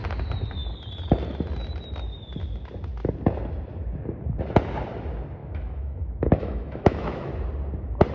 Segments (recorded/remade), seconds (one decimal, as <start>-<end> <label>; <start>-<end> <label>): 0.0-5.4 recorded; 5.4-7.3 remade; 7.3-8.1 recorded